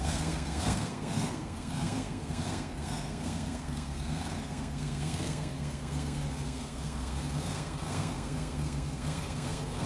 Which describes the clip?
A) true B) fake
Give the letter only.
B